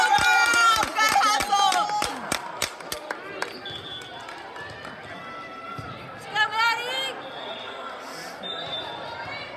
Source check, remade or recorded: recorded